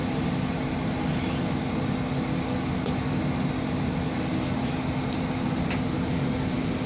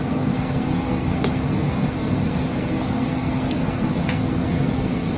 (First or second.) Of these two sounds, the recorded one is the first